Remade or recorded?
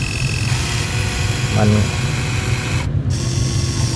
recorded